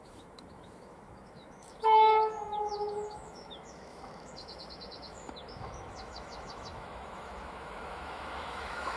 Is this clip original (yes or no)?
no